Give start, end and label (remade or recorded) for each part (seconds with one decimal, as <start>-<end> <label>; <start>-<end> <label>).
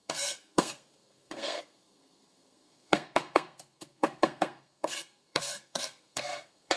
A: 0.0-6.8 remade